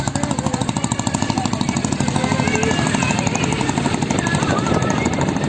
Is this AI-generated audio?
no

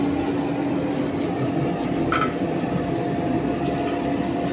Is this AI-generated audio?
no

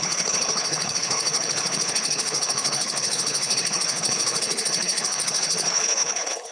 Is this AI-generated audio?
yes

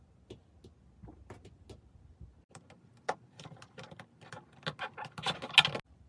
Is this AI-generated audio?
no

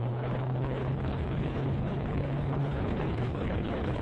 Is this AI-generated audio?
yes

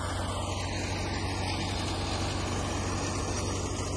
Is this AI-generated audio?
no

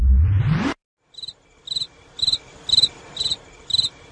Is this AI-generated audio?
no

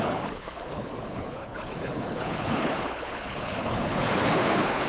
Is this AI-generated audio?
yes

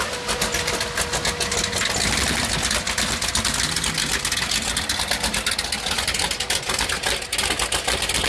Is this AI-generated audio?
no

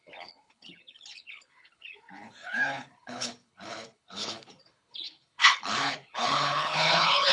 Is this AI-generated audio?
yes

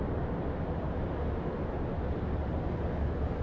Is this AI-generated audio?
no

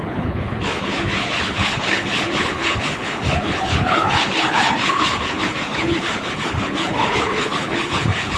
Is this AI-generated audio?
yes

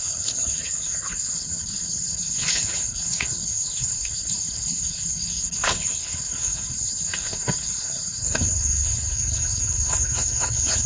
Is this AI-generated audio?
yes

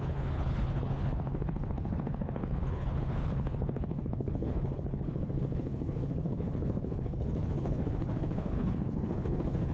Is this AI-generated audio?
yes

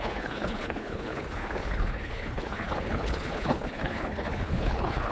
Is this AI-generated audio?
yes